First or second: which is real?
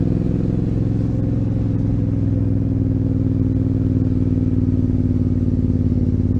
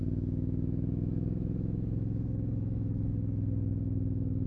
first